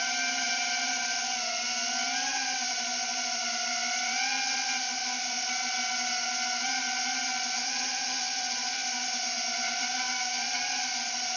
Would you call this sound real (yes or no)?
no